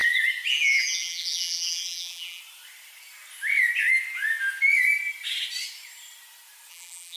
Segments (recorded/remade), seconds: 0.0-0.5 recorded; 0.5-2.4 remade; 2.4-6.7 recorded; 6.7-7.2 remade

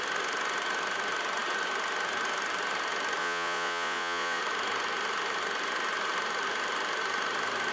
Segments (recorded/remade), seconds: 0.0-3.2 recorded; 3.2-4.4 remade; 4.4-7.7 recorded